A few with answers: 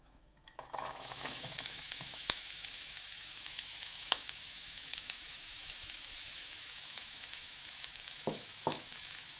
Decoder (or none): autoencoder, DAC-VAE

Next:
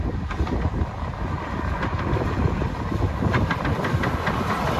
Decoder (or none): none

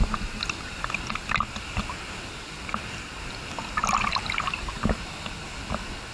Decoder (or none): none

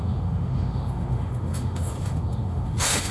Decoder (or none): autoencoder, DAC-VAE